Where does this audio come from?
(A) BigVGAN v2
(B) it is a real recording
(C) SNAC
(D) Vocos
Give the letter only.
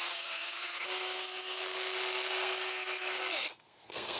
C